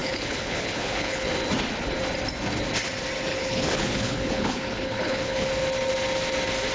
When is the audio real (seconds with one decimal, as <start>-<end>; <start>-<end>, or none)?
1.3-3.3; 5.5-6.7